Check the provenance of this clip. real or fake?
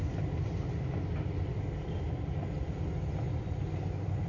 real